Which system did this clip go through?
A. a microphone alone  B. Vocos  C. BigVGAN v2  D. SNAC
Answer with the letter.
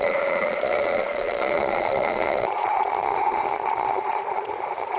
B